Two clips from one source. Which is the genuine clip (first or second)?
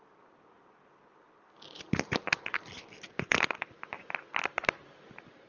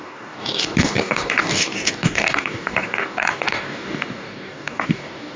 first